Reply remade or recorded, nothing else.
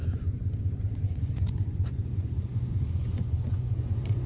remade